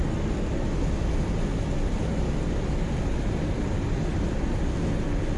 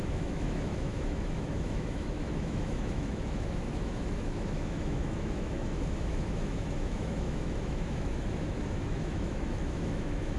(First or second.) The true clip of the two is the first